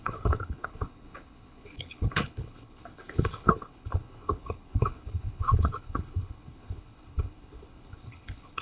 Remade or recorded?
remade